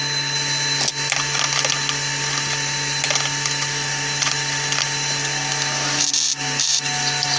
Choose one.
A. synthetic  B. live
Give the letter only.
B